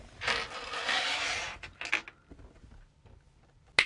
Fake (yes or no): no